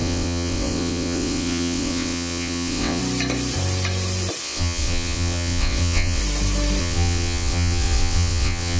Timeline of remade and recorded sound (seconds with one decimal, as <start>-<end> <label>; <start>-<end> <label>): 0.0-3.0 remade; 3.0-4.4 recorded; 4.4-6.2 remade; 6.2-6.8 recorded; 6.8-8.8 remade